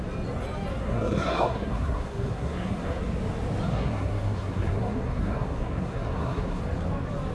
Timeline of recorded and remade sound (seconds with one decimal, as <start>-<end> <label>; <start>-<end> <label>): 0.0-0.8 recorded; 0.8-3.0 remade; 3.0-3.7 recorded; 3.7-6.6 remade; 6.6-7.3 recorded